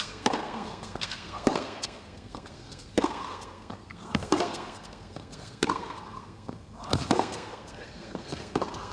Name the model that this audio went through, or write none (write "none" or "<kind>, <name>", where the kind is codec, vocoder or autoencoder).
codec, SNAC